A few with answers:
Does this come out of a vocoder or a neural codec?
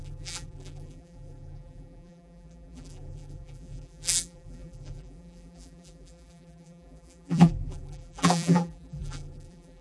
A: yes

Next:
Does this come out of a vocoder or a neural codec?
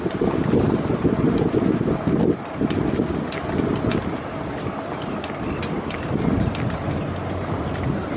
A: no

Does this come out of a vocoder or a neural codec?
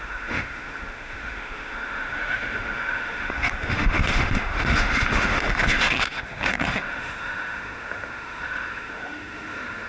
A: yes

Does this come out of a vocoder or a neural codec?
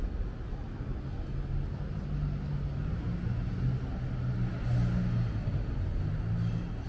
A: no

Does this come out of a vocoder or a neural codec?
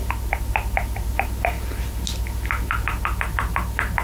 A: no